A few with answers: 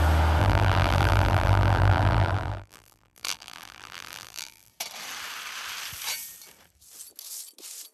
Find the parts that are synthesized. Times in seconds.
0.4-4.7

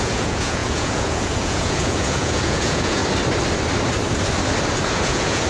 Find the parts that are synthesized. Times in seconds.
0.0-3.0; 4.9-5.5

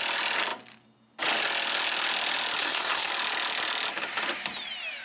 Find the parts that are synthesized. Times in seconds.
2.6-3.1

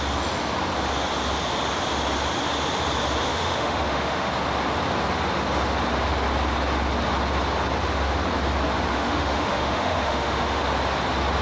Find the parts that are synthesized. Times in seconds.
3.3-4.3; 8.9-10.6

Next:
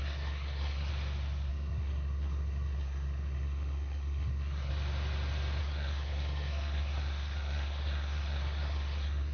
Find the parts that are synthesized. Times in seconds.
0.0-0.9; 1.5-4.7; 5.6-9.3